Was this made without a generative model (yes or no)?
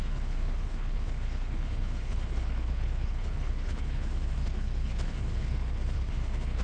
no